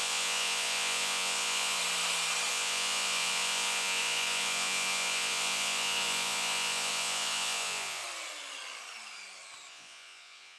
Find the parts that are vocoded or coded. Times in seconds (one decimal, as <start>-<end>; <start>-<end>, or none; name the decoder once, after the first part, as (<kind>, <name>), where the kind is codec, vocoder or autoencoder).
0.0-1.8 (vocoder, Vocos); 2.5-8.0; 9.7-10.6